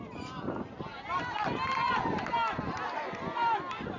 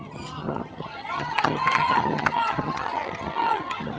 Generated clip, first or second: second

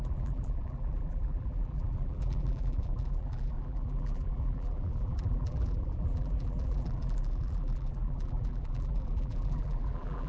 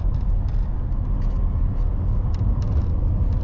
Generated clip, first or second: first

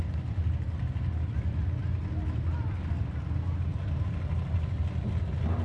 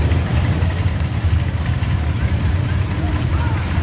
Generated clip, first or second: second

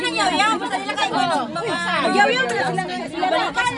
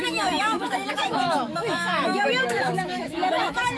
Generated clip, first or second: second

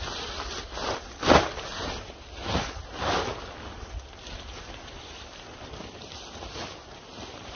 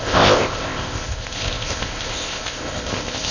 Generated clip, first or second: second